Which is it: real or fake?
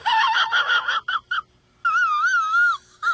real